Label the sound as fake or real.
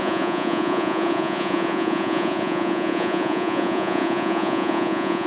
fake